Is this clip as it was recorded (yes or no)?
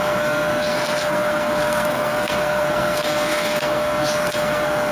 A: no